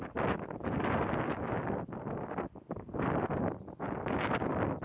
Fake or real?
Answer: real